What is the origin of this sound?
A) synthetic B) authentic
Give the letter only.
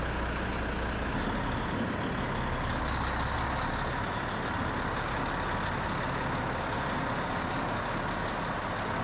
B